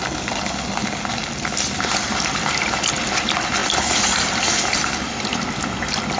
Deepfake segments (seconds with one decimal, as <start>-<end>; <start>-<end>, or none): none